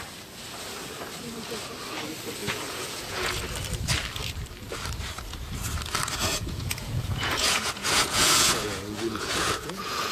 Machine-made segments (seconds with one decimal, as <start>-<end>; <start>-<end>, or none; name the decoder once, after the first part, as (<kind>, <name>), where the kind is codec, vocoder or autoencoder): 2.4-3.4 (vocoder, Vocos); 6.2-10.1